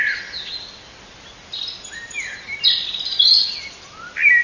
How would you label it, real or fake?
real